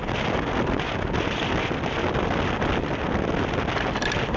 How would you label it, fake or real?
real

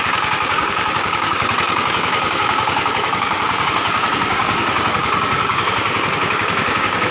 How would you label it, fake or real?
fake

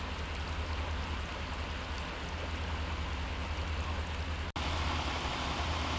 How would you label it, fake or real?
real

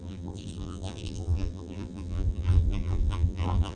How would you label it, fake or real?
fake